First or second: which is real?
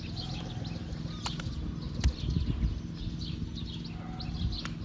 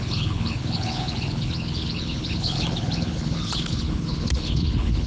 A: first